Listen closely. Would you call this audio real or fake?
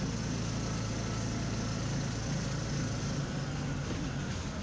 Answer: real